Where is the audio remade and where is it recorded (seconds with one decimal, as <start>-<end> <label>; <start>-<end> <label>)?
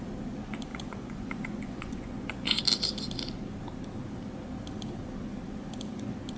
0.0-0.7 recorded; 0.7-2.6 remade; 2.6-6.4 recorded